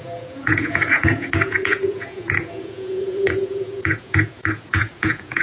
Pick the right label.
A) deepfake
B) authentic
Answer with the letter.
A